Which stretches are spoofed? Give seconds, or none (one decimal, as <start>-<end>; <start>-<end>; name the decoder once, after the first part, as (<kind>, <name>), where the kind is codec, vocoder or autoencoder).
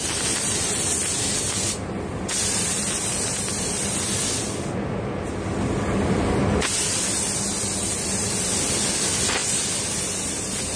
none